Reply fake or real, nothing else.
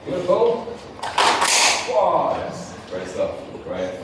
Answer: real